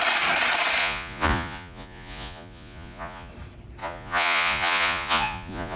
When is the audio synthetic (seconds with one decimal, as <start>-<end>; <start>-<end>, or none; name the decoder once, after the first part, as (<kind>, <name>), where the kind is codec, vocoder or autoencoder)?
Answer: 0.8-3.3 (vocoder, Vocos); 3.8-5.8